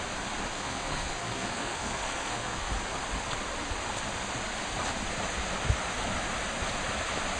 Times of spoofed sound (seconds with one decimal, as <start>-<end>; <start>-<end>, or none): 0.5-2.7